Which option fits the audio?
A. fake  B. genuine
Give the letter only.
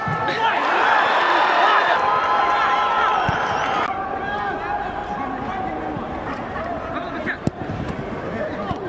B